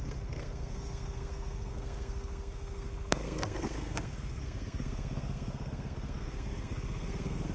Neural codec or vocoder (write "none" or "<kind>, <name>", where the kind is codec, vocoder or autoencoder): codec, SNAC